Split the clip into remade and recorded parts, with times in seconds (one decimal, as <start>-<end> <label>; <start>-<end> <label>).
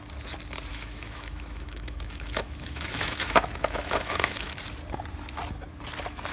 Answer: 0.0-0.7 recorded; 0.7-4.5 remade; 4.5-6.3 recorded